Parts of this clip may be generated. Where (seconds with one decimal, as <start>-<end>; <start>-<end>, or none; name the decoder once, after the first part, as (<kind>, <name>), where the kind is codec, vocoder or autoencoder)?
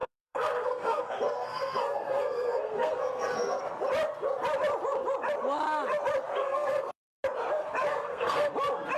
0.0-3.6 (codec, SNAC); 6.4-6.9; 7.9-8.5